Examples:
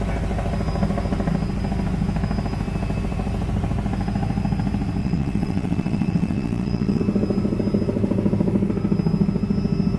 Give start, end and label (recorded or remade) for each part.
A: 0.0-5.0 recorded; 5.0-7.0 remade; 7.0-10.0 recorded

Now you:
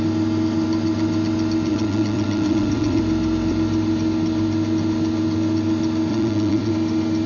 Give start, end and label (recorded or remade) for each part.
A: 0.0-1.7 recorded; 1.7-3.0 remade; 3.0-6.1 recorded; 6.1-6.7 remade; 6.7-7.3 recorded

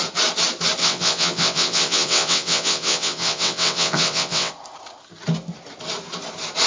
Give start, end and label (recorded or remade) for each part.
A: 0.0-0.8 recorded; 0.8-4.5 remade; 4.5-6.7 recorded

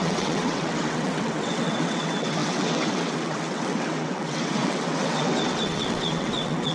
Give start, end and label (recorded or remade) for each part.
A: 0.0-6.7 remade

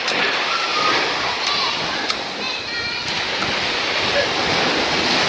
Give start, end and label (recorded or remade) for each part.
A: 0.0-5.3 recorded

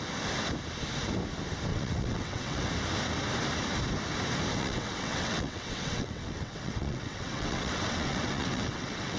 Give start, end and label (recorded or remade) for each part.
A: 0.0-1.7 recorded; 1.7-2.6 remade; 2.6-4.5 recorded; 4.5-9.2 remade